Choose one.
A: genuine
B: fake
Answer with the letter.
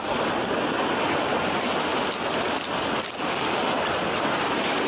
A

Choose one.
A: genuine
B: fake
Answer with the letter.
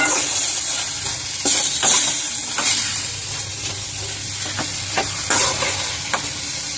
A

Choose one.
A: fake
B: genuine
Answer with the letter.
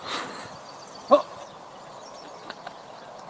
B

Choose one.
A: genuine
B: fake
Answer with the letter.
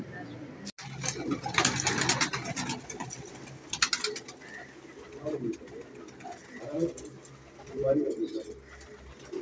A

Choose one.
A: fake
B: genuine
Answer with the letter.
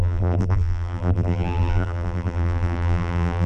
A